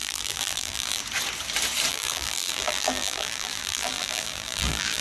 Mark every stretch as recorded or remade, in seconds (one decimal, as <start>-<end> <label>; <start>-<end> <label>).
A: 0.0-1.0 remade; 1.0-1.9 recorded; 1.9-5.0 remade